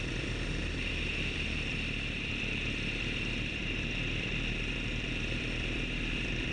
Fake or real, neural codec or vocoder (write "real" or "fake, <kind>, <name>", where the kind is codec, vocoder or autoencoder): fake, vocoder, BigVGAN v2